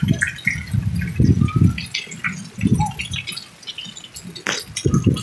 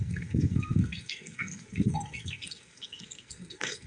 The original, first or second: first